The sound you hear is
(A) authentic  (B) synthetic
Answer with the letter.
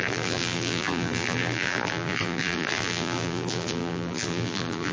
B